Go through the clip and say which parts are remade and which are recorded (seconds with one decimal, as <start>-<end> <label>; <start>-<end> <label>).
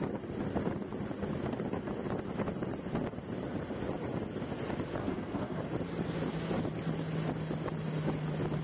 0.0-5.0 recorded; 5.0-5.6 remade; 5.6-8.6 recorded